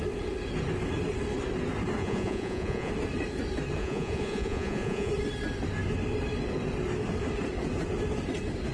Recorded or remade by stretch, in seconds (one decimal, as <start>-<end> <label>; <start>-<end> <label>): 0.0-2.0 recorded; 2.0-2.9 remade; 2.9-3.8 recorded; 3.8-5.1 remade; 5.1-8.7 recorded